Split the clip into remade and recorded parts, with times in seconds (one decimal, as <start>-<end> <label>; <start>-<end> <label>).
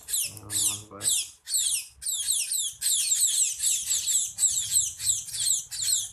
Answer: 0.0-4.2 recorded; 4.2-5.6 remade; 5.6-6.1 recorded